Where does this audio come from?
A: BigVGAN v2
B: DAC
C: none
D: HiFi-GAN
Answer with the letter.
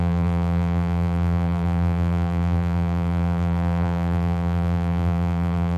A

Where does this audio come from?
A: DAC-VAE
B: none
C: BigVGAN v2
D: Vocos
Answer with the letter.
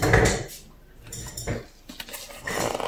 B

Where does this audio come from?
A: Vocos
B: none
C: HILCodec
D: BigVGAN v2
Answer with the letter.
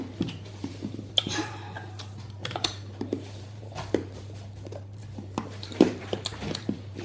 D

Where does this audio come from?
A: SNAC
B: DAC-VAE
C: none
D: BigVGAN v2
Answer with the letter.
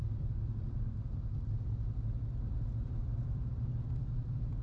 D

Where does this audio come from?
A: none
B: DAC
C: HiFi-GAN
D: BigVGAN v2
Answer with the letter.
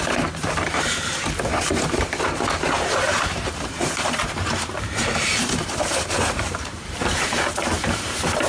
D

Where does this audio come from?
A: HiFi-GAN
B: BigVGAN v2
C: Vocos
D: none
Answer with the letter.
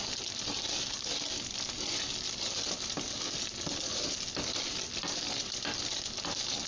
D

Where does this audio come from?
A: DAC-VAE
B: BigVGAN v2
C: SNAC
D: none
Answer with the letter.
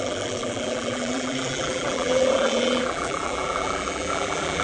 B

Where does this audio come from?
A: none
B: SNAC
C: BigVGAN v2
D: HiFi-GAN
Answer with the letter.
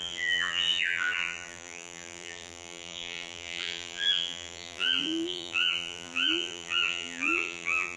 C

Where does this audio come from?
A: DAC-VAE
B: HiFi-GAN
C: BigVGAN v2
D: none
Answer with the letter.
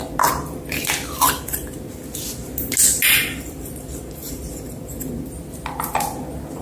D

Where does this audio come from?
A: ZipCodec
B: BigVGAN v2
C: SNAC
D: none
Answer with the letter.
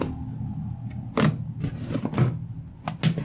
D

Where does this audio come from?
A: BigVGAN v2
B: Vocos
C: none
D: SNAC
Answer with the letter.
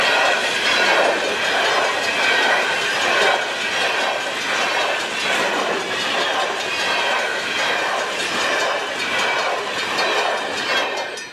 C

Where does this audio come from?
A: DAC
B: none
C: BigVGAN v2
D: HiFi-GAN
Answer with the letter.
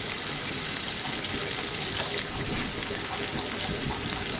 B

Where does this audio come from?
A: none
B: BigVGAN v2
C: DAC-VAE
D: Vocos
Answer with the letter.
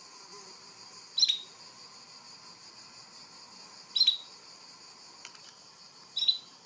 A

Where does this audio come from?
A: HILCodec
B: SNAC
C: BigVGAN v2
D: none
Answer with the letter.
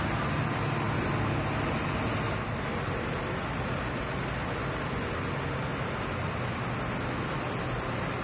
D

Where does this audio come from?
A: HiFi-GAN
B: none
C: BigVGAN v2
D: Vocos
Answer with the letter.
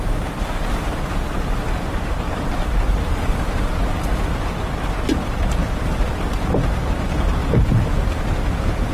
C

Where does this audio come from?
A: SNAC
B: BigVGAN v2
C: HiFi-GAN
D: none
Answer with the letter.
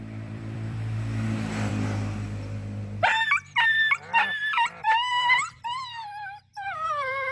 B